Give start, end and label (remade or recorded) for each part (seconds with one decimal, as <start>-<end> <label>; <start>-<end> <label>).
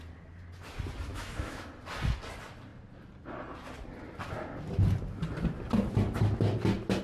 0.0-1.1 recorded; 1.1-1.7 remade; 1.7-7.0 recorded